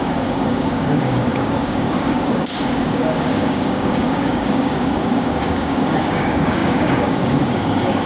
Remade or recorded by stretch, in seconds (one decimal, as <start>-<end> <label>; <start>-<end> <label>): 0.0-8.1 remade